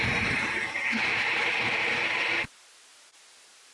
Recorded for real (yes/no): yes